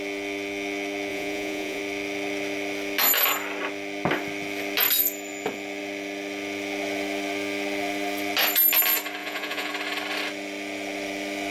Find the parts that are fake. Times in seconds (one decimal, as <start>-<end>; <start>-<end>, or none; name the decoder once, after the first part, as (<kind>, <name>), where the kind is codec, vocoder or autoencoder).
1.1-1.8 (vocoder, Vocos); 9.2-9.7